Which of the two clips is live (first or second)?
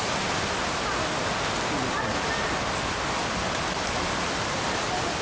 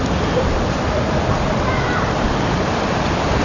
first